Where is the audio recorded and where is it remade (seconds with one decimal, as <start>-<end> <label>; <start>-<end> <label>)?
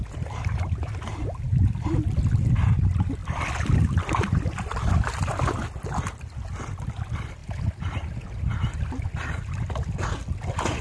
0.0-3.2 recorded; 3.2-4.9 remade; 4.9-7.4 recorded; 7.4-8.4 remade; 8.4-10.8 recorded